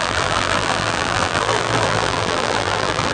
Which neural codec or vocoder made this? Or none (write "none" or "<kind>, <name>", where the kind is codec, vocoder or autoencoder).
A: vocoder, BigVGAN v2